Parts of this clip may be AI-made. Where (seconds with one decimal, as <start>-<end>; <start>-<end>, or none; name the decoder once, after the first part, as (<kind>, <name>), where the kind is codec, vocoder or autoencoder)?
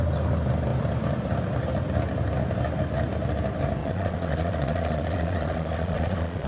3.8-6.5 (vocoder, Vocos)